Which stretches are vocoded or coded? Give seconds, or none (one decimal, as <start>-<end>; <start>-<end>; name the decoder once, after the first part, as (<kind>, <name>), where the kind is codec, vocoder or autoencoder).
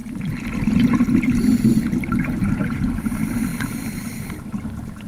0.0-0.6 (vocoder, BigVGAN v2); 3.5-5.1